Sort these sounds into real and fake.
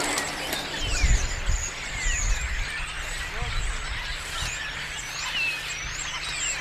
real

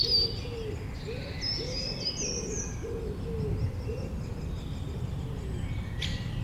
real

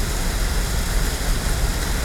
real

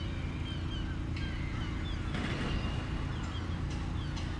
real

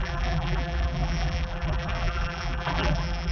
fake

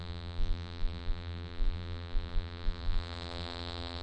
fake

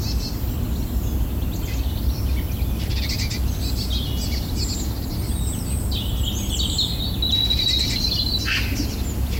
real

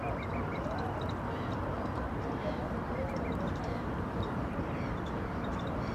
fake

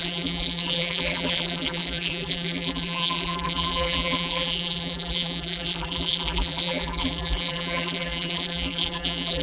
fake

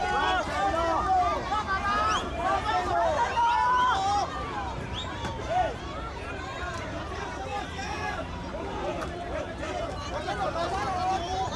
fake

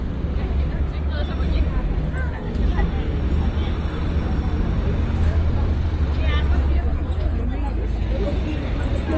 real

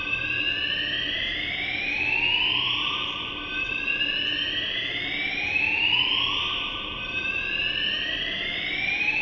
fake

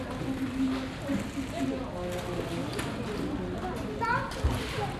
real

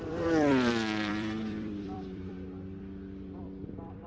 fake